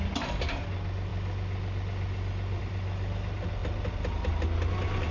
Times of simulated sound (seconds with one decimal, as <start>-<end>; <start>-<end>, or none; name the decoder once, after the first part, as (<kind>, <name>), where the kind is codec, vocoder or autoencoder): none